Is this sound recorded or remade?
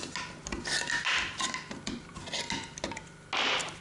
recorded